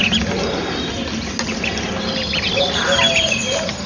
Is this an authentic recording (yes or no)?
yes